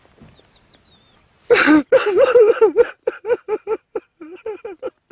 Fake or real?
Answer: real